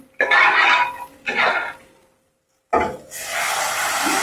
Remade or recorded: recorded